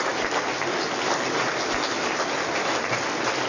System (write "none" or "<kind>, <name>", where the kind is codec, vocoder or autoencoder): none